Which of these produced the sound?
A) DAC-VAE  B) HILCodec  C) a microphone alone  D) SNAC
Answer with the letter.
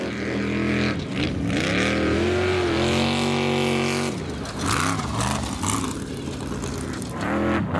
C